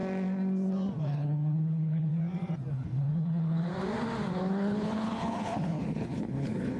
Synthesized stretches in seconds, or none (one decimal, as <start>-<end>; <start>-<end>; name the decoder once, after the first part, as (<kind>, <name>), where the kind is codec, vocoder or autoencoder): 1.0-2.1 (codec, HILCodec); 2.7-3.7; 4.3-6.8